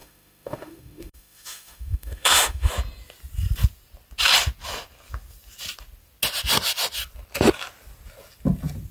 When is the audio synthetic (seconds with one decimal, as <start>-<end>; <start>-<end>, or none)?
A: 0.0-2.7